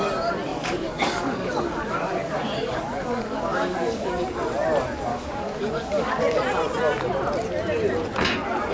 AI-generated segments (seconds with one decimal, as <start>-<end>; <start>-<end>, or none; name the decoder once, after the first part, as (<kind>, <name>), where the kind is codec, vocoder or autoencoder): 0.5-4.2 (codec, DAC); 5.1-6.4